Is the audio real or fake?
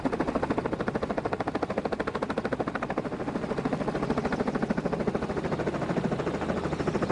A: real